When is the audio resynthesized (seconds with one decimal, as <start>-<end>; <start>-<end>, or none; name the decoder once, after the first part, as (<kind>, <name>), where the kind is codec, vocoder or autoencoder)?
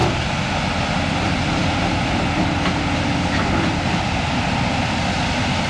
none